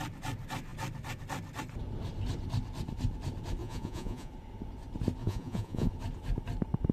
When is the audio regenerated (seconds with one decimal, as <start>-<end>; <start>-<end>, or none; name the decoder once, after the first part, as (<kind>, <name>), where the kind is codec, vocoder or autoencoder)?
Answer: 3.6-4.3 (vocoder, Vocos); 5.2-5.9